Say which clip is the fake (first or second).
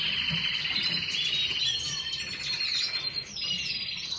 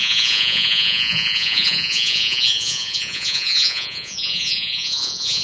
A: second